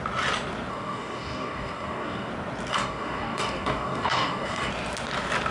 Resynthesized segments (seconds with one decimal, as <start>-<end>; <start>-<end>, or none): 0.7-2.3; 2.7-4.7